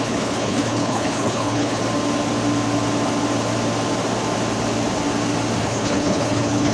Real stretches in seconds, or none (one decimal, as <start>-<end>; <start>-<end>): 1.8-5.6